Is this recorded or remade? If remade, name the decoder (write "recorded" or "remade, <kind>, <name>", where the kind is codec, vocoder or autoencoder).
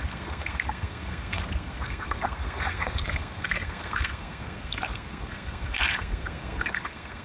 remade, codec, SNAC